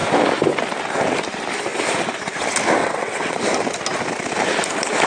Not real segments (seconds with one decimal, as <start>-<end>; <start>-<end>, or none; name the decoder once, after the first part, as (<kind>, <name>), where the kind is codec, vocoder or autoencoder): 2.8-3.4 (vocoder, WaveNeXt)